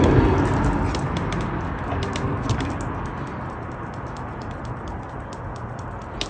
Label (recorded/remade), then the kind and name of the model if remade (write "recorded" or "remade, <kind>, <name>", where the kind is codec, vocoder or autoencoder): recorded